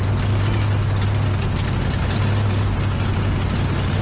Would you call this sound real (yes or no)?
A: yes